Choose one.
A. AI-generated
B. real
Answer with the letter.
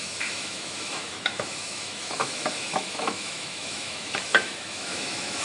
A